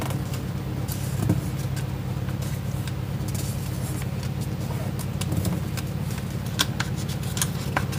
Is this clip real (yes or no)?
yes